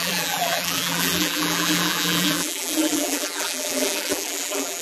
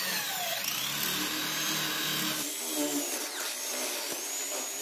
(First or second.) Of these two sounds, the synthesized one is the first